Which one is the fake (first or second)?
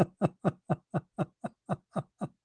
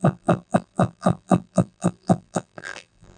second